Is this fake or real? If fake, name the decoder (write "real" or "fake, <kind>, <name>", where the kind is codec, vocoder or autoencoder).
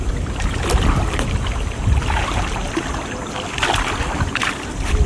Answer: real